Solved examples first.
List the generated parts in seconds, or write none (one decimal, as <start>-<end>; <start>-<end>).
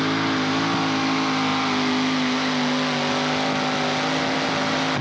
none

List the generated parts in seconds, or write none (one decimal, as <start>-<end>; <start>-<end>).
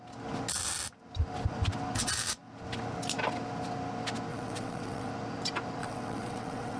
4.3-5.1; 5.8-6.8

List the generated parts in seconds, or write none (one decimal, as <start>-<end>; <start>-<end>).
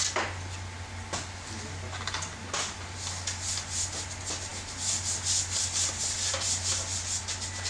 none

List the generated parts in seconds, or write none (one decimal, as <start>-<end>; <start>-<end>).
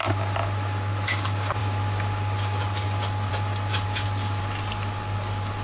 none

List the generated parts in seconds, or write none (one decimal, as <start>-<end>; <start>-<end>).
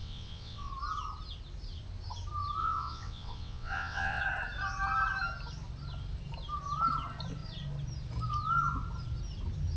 0.0-0.7; 2.6-4.2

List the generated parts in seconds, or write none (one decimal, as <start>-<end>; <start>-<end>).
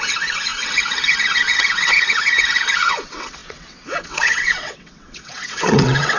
0.0-6.2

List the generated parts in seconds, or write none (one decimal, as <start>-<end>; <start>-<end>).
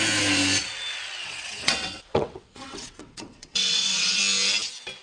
1.2-4.2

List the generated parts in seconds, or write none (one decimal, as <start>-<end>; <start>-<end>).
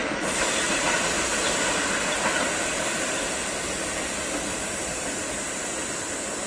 none